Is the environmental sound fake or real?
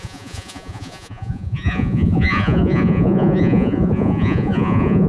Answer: fake